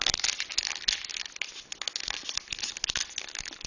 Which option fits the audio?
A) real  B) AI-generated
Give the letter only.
A